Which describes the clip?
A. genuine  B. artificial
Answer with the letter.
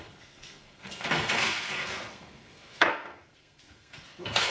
B